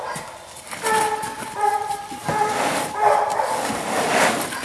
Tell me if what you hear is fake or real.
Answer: real